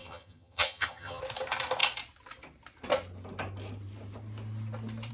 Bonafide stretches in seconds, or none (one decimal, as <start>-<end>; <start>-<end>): 1.2-5.1